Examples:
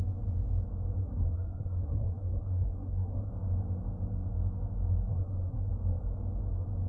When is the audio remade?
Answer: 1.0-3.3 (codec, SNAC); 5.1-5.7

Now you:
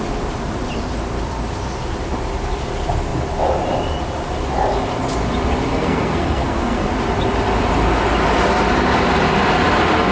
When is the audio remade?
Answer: 5.7-6.9 (codec, SNAC)